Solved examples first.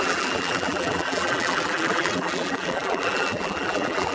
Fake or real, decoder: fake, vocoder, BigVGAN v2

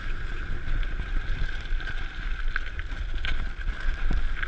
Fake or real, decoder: real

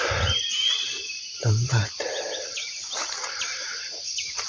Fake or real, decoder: fake, vocoder, BigVGAN v2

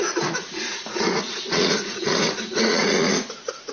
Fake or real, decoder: fake, vocoder, Vocos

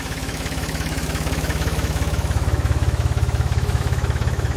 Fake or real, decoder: fake, autoencoder, DAC-VAE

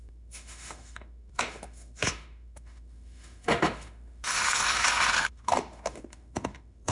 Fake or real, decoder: fake, autoencoder, DAC-VAE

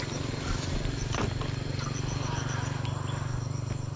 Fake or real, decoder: real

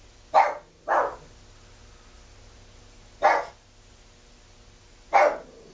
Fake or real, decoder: real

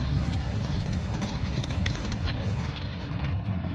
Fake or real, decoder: fake, codec, SNAC